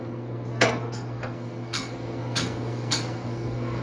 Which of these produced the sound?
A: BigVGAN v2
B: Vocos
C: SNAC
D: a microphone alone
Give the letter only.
C